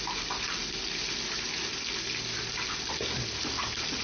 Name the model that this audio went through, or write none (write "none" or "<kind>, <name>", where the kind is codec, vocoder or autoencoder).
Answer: none